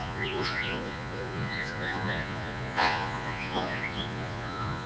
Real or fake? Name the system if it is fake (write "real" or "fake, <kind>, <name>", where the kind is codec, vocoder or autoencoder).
fake, vocoder, Vocos